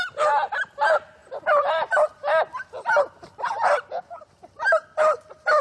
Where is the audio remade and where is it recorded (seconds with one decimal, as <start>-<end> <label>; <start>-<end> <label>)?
0.0-1.2 recorded; 1.2-2.5 remade; 2.5-2.9 recorded; 2.9-3.5 remade; 3.5-5.6 recorded